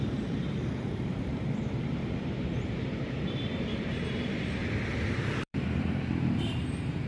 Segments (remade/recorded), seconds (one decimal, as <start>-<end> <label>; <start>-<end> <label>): 0.0-4.6 remade; 4.6-5.1 recorded; 5.1-7.1 remade